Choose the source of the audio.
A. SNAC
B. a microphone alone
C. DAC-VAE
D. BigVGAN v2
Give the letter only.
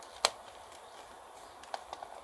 B